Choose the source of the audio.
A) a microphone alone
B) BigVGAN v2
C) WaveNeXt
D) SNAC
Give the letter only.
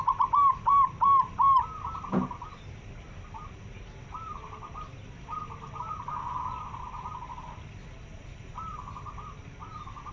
A